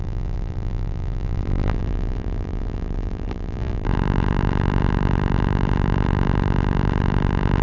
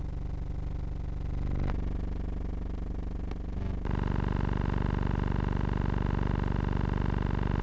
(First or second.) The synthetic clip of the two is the first